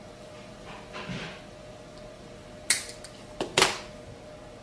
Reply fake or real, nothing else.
real